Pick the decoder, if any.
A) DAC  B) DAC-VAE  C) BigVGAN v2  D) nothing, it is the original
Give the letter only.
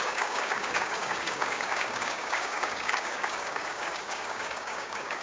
A